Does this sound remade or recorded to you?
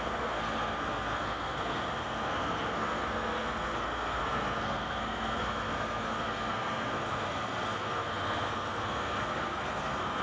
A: remade